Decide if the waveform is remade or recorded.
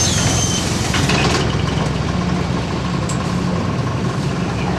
recorded